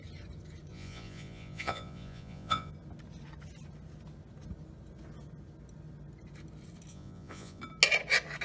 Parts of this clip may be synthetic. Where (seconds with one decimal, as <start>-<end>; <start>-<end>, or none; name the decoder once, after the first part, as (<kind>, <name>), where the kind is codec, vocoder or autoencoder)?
0.7-2.7 (vocoder, Vocos); 6.9-7.6